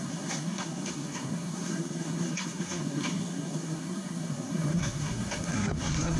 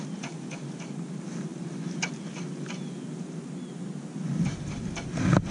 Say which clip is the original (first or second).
second